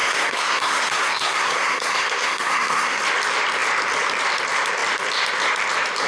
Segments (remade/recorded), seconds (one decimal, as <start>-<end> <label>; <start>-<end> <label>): 0.0-3.0 remade; 3.0-6.1 recorded